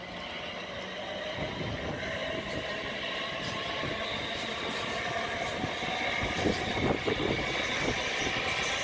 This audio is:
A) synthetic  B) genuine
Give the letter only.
B